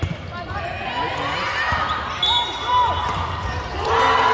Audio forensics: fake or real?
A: real